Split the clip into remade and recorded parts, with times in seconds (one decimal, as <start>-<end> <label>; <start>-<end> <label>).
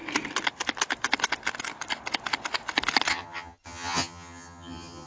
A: 0.0-3.1 recorded; 3.1-5.1 remade